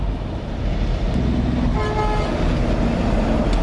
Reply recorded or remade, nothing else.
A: recorded